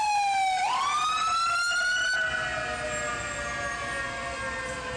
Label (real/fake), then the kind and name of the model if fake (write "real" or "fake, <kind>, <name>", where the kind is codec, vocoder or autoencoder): real